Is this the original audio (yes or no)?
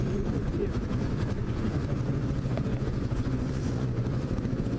no